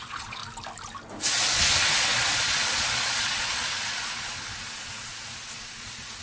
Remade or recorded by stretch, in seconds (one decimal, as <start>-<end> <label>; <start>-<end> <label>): 0.0-0.4 remade; 0.4-1.5 recorded; 1.5-6.2 remade